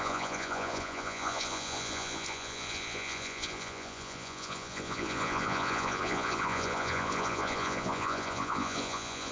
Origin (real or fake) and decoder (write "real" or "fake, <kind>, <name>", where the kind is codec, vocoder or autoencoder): fake, vocoder, Vocos